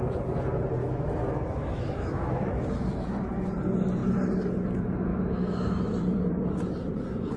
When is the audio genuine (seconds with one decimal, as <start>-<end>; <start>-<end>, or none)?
0.0-0.8; 3.5-5.1; 6.0-7.4